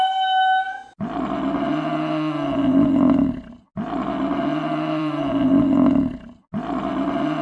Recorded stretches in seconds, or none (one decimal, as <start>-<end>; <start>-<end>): 0.0-4.5; 5.2-7.4